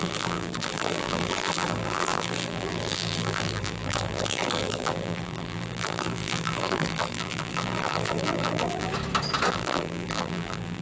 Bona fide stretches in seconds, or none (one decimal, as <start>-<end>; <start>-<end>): 8.9-9.5